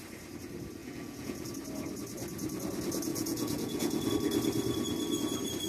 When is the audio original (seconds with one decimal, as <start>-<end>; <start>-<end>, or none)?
0.0-0.8; 1.5-3.1; 4.1-5.7